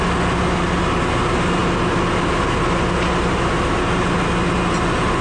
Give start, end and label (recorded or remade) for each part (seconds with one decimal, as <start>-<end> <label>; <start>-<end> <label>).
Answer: 0.0-5.2 recorded